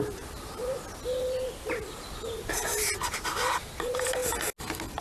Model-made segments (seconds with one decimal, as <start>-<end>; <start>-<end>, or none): 0.0-0.6; 2.5-4.2